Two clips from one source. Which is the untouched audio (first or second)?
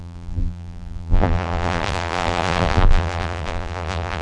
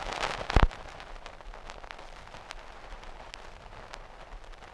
second